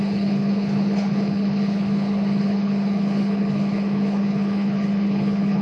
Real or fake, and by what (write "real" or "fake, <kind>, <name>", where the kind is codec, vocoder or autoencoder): fake, codec, HILCodec